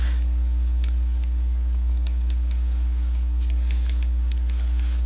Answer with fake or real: fake